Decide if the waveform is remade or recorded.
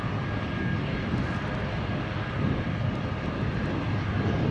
recorded